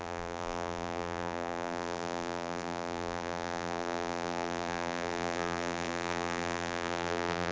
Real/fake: fake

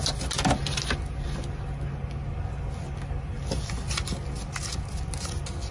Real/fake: real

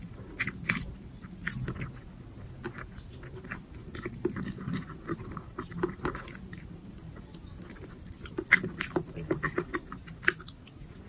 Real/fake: real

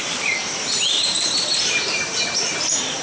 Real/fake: fake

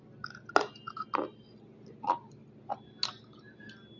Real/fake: real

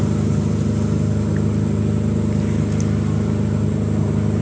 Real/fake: real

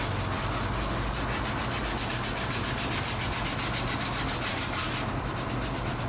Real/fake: real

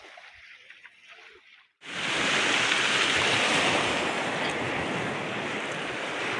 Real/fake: real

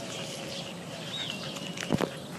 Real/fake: real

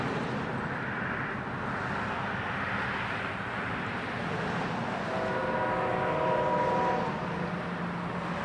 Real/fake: real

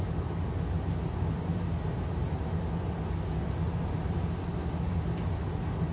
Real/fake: real